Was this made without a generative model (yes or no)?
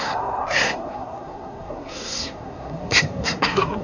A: no